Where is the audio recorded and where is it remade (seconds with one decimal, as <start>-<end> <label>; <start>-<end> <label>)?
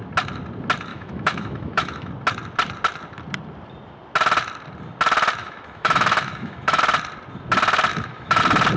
0.0-0.9 recorded; 0.9-2.1 remade; 2.1-5.4 recorded; 5.4-6.8 remade; 6.8-7.9 recorded; 7.9-8.4 remade; 8.4-8.8 recorded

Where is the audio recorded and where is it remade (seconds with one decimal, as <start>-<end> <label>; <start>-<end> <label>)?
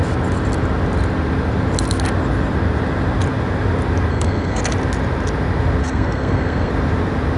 0.0-4.1 recorded; 4.1-4.6 remade; 4.6-5.8 recorded; 5.8-6.7 remade; 6.7-7.4 recorded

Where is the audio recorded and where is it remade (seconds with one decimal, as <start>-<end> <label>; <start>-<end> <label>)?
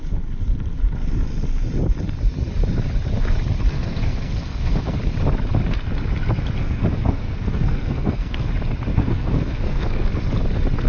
0.0-3.7 recorded; 3.7-5.0 remade; 5.0-6.6 recorded; 6.6-8.5 remade; 8.5-8.9 recorded; 8.9-10.1 remade; 10.1-10.9 recorded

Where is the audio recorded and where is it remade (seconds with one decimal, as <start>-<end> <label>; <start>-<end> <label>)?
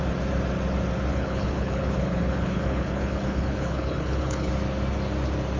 0.0-1.1 recorded; 1.1-4.5 remade; 4.5-5.6 recorded